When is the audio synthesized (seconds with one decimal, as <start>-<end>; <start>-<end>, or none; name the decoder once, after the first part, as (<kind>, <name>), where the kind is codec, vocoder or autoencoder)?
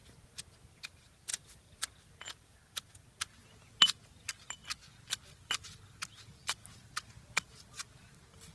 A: 0.0-0.6 (vocoder, BigVGAN v2); 6.6-7.1